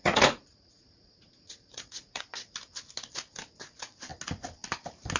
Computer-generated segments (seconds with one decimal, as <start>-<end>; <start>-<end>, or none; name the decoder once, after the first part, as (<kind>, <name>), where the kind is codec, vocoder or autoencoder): 0.0-2.2 (vocoder, Vocos)